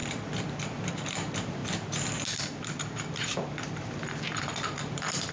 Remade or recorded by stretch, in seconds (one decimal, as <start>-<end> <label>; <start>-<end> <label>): 0.0-0.9 recorded; 0.9-1.6 remade; 1.6-2.3 recorded; 2.3-5.3 remade